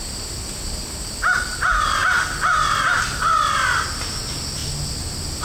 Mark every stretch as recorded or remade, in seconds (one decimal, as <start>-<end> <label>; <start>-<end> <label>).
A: 0.0-5.4 recorded